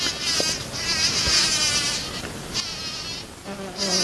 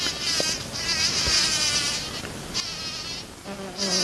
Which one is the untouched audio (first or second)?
first